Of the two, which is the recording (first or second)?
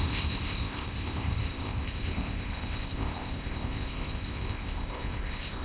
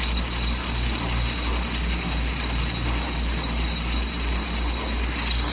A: second